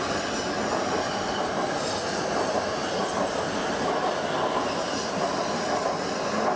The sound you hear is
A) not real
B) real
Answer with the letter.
B